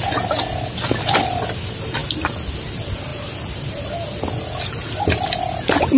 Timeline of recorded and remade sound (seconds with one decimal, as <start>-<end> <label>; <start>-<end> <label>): 0.0-6.0 recorded